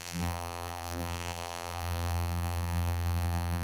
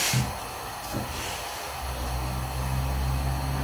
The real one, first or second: second